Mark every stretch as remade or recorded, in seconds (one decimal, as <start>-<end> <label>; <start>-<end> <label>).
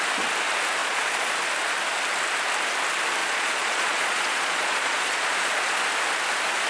0.0-0.8 recorded; 0.8-1.3 remade; 1.3-3.2 recorded; 3.2-5.7 remade; 5.7-6.7 recorded